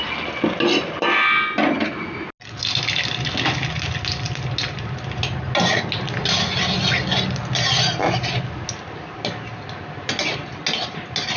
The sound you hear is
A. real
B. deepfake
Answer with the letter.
A